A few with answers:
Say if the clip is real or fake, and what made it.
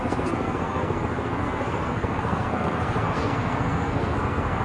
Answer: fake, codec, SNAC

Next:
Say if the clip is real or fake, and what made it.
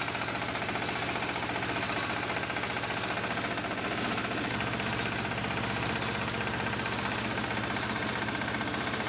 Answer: real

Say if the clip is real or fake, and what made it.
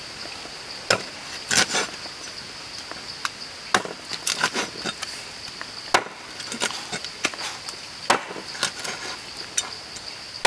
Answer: real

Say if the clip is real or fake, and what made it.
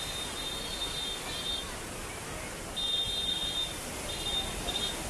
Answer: real